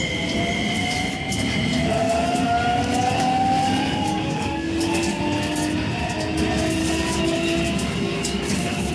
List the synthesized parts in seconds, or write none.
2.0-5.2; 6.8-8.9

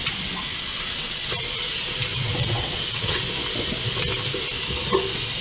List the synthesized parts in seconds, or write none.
0.7-1.3; 2.1-3.2

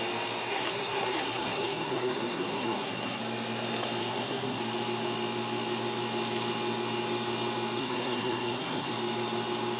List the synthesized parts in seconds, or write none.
0.5-3.2; 4.0-4.6; 7.8-8.9

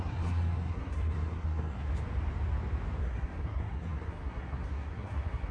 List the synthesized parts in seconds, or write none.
0.0-1.9; 3.0-5.5

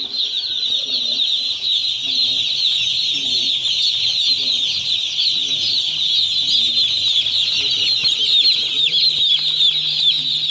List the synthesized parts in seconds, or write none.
none

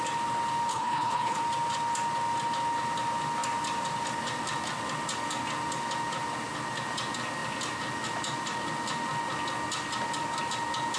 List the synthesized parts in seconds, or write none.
0.7-1.4

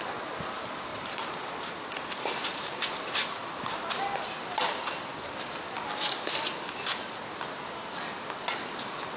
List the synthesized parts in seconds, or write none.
0.9-4.7

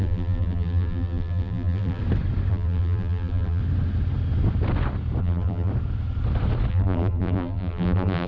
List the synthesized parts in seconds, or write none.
0.0-2.0; 2.5-3.6; 5.2-5.7; 6.7-8.3